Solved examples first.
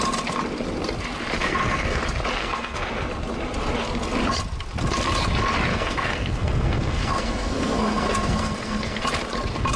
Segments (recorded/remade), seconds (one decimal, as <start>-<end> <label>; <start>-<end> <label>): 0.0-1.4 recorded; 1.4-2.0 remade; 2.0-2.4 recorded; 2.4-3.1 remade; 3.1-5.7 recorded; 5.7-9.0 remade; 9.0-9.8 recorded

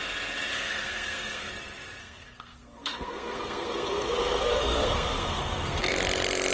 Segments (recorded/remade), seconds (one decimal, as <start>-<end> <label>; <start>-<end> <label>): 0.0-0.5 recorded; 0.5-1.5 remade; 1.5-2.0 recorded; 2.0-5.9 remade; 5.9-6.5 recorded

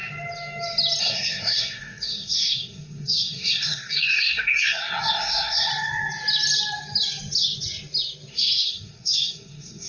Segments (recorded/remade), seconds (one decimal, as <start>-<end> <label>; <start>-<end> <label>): 0.0-1.0 recorded; 1.0-5.7 remade; 5.7-8.3 recorded; 8.3-9.9 remade

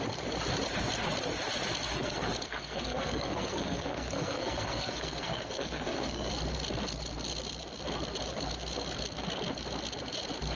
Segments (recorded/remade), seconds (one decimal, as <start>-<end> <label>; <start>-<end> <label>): 0.0-1.9 recorded; 1.9-6.3 remade; 6.3-10.5 recorded

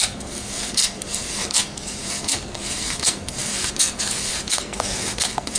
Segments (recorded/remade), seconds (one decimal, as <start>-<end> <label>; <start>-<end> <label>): 0.0-5.6 remade